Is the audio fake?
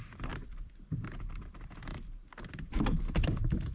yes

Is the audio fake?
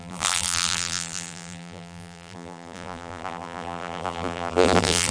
yes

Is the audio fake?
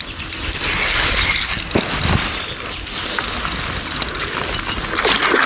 no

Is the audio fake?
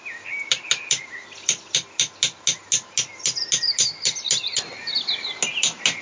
no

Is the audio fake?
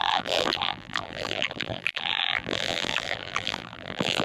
yes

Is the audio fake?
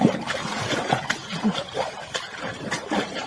yes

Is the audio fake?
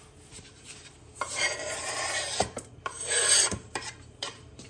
yes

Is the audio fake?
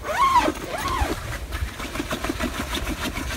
no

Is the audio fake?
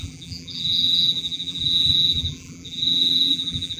yes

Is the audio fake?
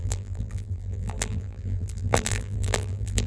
yes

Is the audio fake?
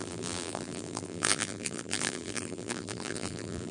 yes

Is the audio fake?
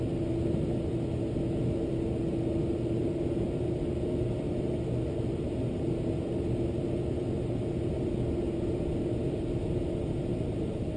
no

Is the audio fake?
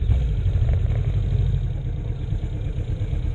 no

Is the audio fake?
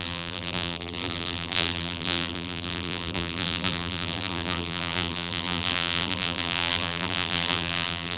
yes